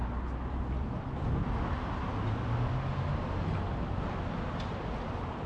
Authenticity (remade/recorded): recorded